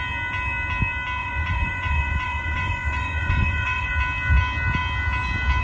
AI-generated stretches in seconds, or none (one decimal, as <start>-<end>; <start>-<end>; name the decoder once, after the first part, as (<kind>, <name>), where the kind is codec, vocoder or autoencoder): 1.2-3.9 (vocoder, Vocos)